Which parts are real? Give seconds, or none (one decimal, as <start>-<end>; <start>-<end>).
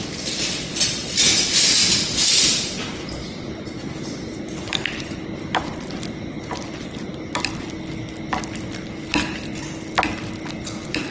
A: 0.0-11.1